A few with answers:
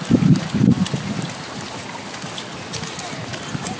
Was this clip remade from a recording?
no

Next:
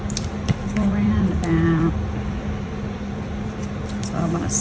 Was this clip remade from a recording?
yes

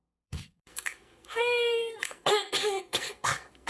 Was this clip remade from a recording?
yes